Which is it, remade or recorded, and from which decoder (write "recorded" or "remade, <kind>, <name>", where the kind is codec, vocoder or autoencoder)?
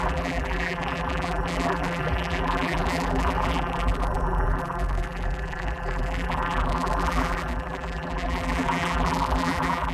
remade, vocoder, BigVGAN v2